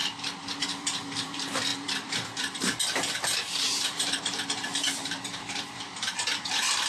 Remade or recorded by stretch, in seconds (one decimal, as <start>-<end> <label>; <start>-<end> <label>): 0.0-0.6 recorded; 0.6-6.9 remade